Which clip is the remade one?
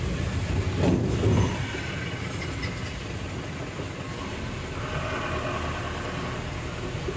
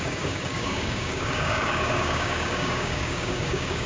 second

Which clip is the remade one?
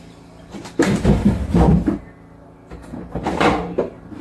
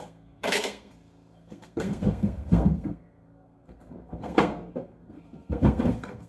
second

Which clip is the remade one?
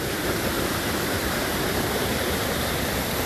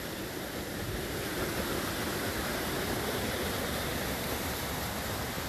first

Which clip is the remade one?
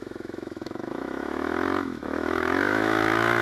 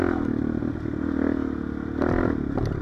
first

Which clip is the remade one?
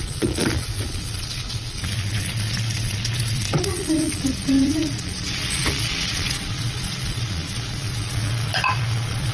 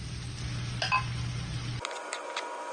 first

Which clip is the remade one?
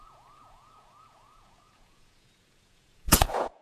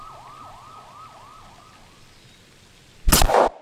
first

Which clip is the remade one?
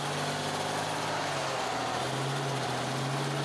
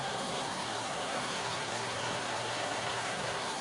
second